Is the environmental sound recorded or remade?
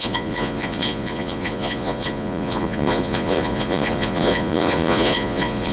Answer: remade